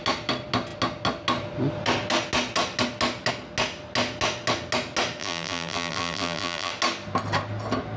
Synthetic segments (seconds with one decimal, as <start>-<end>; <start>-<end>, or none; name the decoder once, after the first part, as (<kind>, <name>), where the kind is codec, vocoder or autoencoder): 5.2-6.7 (vocoder, BigVGAN v2)